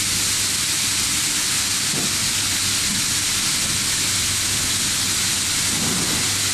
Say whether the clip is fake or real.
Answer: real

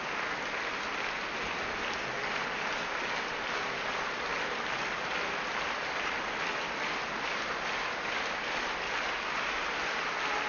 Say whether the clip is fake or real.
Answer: real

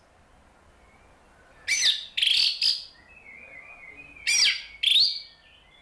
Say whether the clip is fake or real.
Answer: real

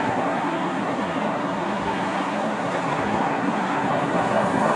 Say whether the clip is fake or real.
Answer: fake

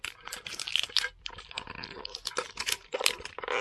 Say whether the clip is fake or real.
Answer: fake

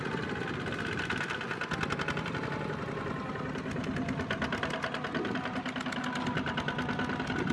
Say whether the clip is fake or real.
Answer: real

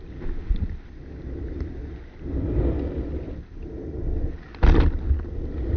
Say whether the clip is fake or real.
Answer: real